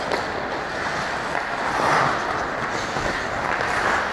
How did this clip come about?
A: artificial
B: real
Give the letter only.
B